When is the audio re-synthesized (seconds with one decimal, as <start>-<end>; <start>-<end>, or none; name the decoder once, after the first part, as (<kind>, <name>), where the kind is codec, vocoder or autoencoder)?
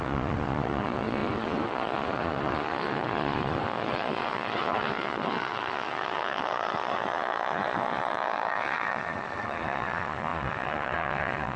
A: 0.0-11.6 (vocoder, Vocos)